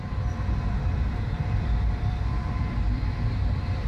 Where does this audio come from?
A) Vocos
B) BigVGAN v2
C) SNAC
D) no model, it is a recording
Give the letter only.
B